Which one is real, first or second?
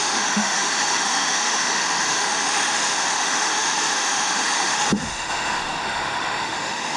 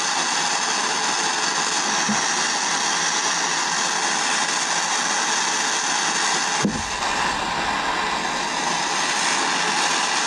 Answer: second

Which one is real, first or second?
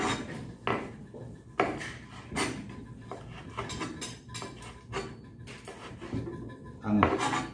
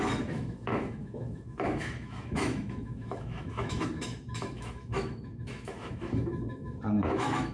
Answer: first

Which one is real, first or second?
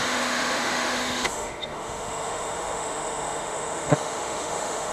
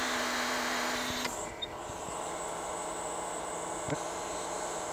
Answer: second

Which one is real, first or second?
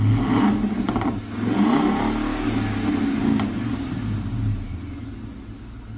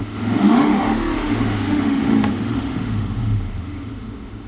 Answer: first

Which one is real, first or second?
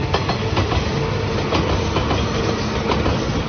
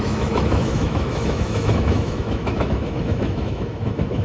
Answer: first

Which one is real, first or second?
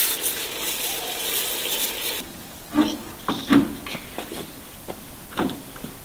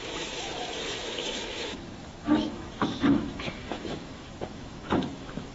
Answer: first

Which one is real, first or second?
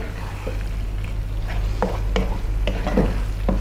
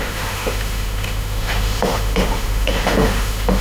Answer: first